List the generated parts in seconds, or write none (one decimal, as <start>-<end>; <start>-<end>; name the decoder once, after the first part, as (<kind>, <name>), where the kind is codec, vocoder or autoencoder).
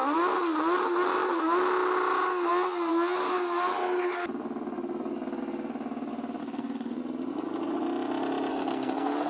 6.4-7.0 (codec, SNAC); 8.5-9.3